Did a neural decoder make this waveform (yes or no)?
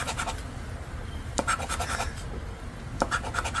no